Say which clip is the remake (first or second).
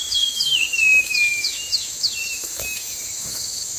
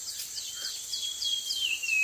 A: first